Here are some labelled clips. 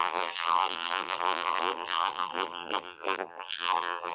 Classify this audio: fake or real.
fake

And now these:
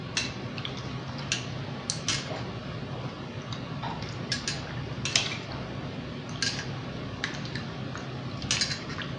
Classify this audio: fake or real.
real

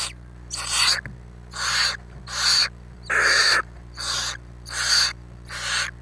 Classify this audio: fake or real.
real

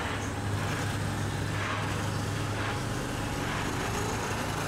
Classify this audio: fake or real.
real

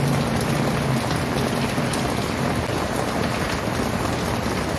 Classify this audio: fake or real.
real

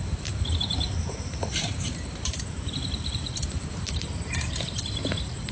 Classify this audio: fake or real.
fake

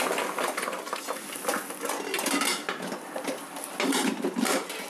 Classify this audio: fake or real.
real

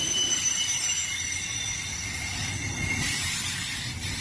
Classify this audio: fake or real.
real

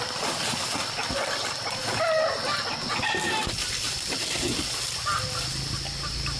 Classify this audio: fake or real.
fake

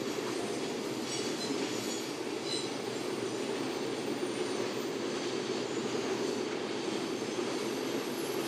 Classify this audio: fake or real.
real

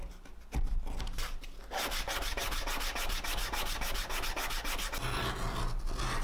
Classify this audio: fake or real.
real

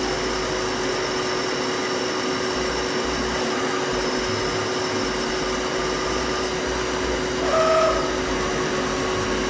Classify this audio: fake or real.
real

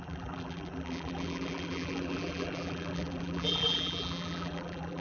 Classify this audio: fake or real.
fake